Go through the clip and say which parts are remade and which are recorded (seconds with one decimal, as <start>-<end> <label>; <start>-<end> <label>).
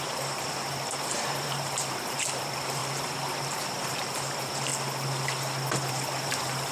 0.0-2.8 remade; 2.8-3.7 recorded; 3.7-4.7 remade; 4.7-5.9 recorded; 5.9-6.7 remade